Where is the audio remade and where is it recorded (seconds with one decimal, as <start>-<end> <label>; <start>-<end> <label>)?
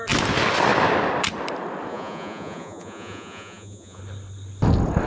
0.0-1.9 recorded; 1.9-4.0 remade; 4.0-5.1 recorded